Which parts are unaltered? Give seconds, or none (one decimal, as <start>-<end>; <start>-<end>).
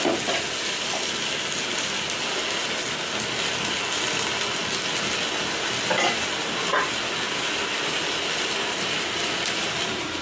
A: 0.0-10.2